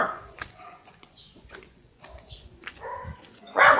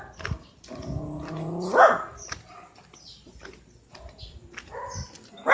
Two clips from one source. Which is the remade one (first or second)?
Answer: first